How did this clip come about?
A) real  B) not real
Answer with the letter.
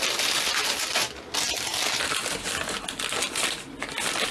A